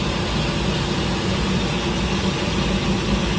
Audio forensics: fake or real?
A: real